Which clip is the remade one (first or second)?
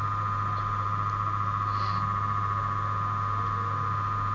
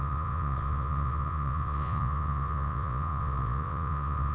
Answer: second